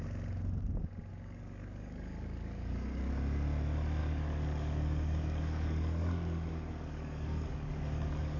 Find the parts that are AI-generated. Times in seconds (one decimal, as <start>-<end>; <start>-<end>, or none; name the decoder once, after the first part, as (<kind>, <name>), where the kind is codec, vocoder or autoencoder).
1.1-3.1 (codec, DAC); 4.0-8.4